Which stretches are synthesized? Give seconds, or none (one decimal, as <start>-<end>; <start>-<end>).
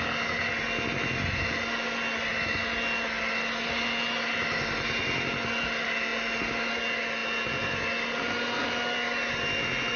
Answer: none